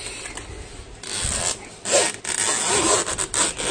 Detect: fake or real real